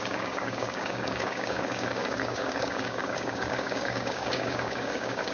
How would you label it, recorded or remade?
remade